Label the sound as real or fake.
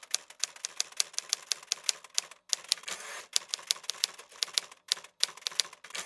real